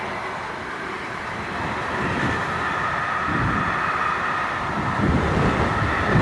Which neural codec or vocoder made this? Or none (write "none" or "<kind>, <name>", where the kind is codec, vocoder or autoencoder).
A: none